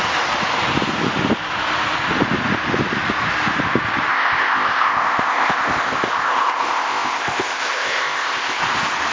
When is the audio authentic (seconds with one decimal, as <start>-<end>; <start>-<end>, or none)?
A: 0.0-4.1; 8.6-9.1